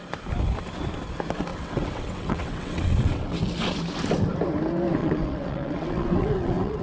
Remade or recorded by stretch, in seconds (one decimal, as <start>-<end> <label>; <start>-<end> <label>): 0.0-1.5 recorded; 1.5-3.4 remade; 3.4-5.0 recorded; 5.0-6.8 remade